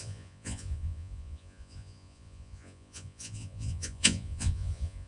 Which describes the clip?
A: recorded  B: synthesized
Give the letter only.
B